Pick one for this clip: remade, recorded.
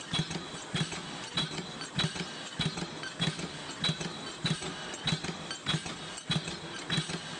recorded